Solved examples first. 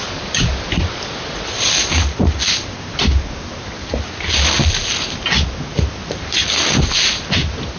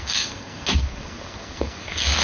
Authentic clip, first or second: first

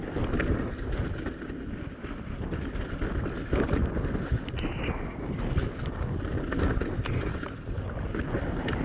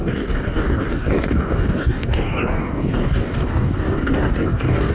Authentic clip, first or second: first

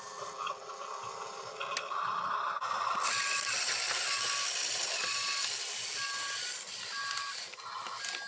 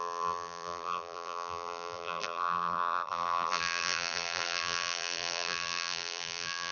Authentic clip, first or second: first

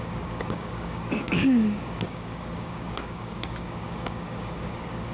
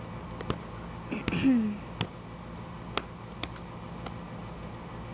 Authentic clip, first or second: second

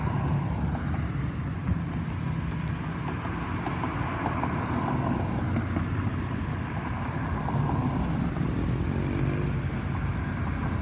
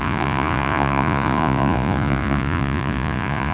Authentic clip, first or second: first